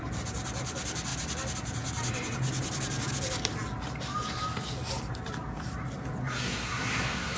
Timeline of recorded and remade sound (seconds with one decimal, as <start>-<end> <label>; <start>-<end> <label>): 0.0-6.2 recorded; 6.2-7.4 remade